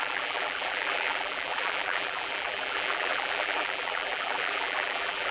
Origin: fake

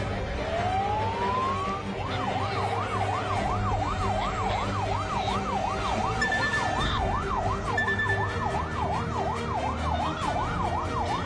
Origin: real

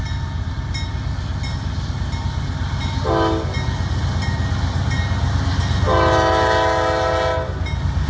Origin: real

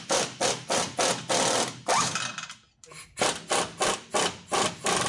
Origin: real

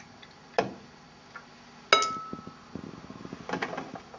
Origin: real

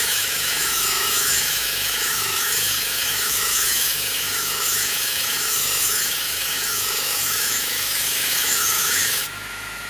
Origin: fake